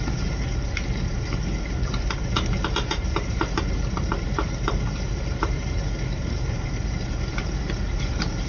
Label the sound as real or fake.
fake